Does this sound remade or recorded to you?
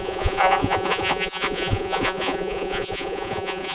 remade